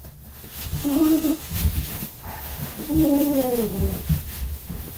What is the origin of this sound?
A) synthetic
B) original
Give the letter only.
A